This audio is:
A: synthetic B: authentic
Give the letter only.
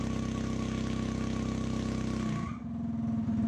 B